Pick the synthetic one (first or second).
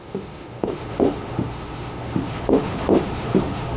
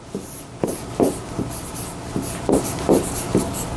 first